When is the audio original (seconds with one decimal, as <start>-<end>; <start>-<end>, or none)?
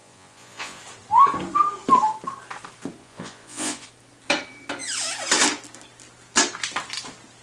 0.8-3.0; 3.9-7.4